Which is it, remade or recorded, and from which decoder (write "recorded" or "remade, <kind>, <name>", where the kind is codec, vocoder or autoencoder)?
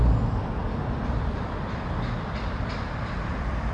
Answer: remade, vocoder, BigVGAN v2